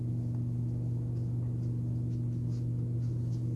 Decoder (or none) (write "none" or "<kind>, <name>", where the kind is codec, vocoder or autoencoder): none